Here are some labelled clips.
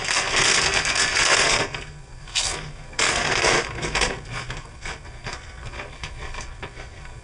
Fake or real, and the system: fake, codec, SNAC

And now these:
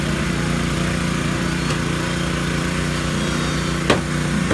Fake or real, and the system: real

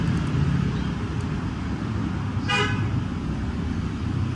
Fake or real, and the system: real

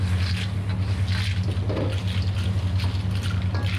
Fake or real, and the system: real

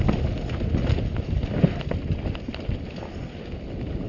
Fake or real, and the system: real